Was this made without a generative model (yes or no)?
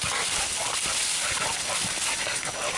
yes